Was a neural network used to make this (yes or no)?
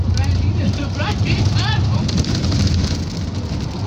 yes